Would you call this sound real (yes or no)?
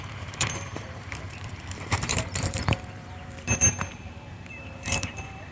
no